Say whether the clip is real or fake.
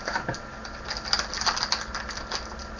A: real